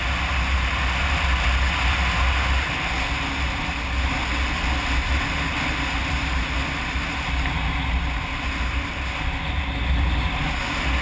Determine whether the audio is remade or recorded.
recorded